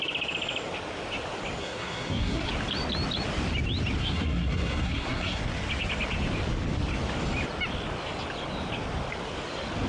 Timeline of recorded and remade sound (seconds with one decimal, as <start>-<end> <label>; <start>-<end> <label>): 0.0-1.6 recorded; 1.6-2.5 remade; 2.5-4.0 recorded; 4.0-5.4 remade; 5.4-9.9 recorded